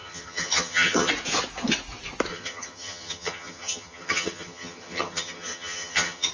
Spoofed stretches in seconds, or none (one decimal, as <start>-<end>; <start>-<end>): 0.0-1.1; 2.3-6.3